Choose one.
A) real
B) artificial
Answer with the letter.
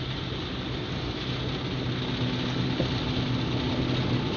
A